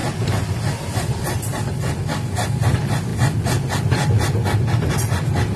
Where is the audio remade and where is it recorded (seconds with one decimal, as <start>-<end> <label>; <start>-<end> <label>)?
0.0-2.0 remade; 2.0-3.1 recorded; 3.1-4.9 remade; 4.9-5.6 recorded